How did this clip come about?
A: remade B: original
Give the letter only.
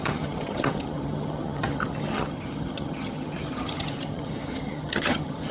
A